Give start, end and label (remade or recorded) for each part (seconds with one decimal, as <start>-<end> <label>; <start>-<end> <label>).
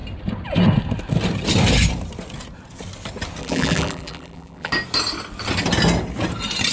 0.0-3.4 recorded; 3.4-4.7 remade; 4.7-6.7 recorded